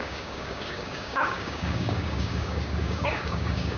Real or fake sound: fake